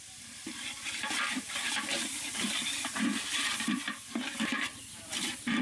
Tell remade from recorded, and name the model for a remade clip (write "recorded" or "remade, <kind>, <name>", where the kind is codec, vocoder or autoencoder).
remade, vocoder, BigVGAN v2